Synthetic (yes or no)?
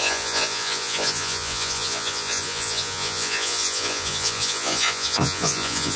yes